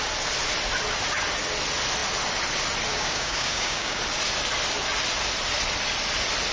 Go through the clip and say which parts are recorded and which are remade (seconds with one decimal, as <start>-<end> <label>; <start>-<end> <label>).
0.0-2.9 recorded; 2.9-4.0 remade; 4.0-6.5 recorded